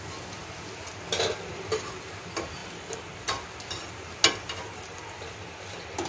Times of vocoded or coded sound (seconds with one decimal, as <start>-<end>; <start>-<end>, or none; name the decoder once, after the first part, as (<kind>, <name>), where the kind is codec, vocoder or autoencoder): none